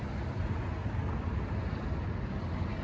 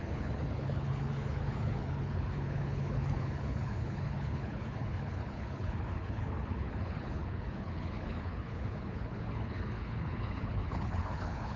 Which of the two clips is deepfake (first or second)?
second